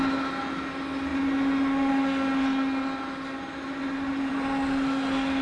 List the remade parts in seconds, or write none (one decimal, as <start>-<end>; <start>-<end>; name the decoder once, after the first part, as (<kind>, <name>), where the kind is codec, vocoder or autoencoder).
none